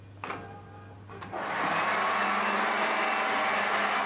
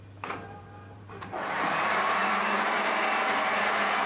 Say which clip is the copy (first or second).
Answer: second